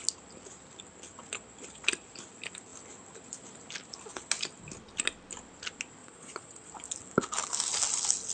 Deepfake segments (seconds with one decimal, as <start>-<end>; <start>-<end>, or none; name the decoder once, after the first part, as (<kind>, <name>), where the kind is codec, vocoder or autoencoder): 6.0-6.7 (vocoder, Vocos)